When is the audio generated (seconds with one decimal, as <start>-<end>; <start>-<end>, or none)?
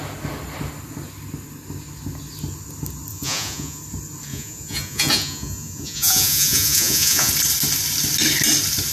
3.1-3.8; 4.3-7.3